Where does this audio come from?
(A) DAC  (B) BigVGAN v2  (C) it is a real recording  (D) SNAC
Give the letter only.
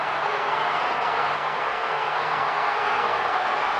D